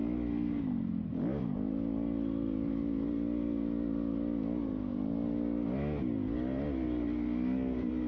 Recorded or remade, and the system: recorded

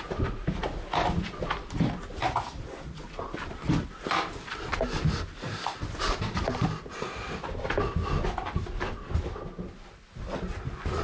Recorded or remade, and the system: recorded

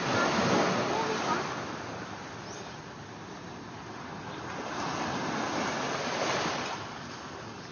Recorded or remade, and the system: recorded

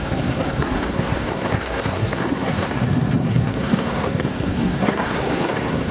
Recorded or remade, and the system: remade, codec, SNAC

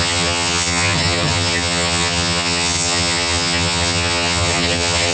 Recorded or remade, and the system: remade, vocoder, HiFi-GAN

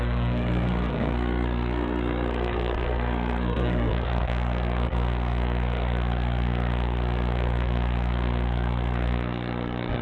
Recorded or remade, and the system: remade, codec, SNAC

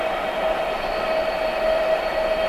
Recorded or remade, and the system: recorded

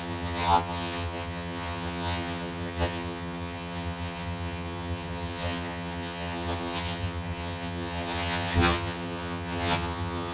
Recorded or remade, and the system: remade, vocoder, HiFi-GAN